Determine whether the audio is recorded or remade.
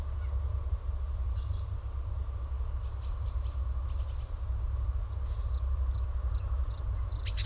recorded